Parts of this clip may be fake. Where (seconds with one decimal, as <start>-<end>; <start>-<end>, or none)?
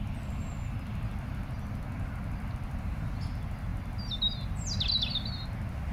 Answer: none